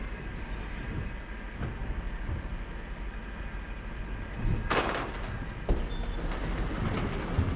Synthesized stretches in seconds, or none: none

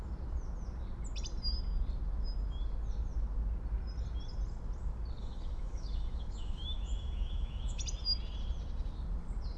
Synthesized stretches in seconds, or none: 5.2-7.8 (autoencoder, DAC-VAE)

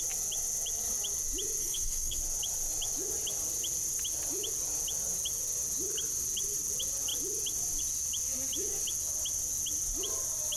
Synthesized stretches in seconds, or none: 1.6-2.2 (codec, SNAC)

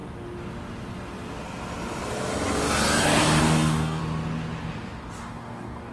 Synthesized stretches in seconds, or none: 3.4-4.0 (codec, DAC); 5.2-5.9

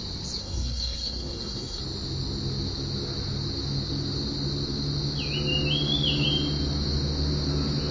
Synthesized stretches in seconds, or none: 0.4-1.8 (codec, SNAC)

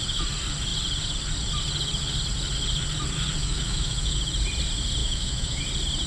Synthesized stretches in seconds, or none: 3.4-4.2 (autoencoder, DAC-VAE); 5.0-5.6

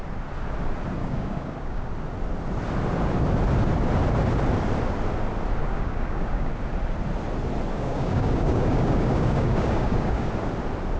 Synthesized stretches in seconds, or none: 1.0-1.9 (codec, DAC); 5.6-6.5; 7.7-10.3

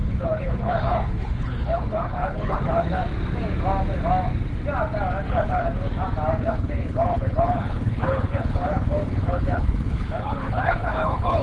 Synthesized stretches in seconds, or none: 0.0-3.0 (codec, HILCodec); 5.3-5.7; 6.4-11.4